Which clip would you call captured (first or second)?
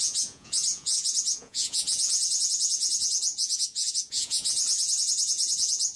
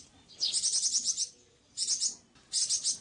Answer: second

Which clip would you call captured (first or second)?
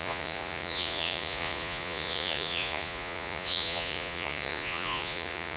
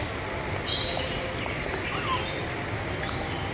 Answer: second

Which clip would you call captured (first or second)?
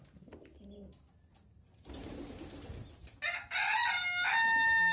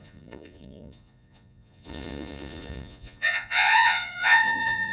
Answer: first